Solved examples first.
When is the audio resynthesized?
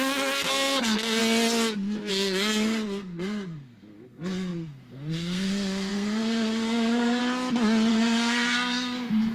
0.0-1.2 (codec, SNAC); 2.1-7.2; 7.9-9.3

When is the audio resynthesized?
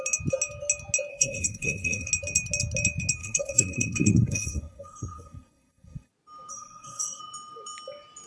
1.1-2.1 (codec, SNAC); 3.2-6.1; 6.5-7.2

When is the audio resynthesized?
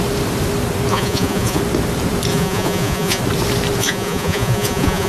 0.9-1.6 (vocoder, Vocos); 2.3-3.2; 3.8-5.1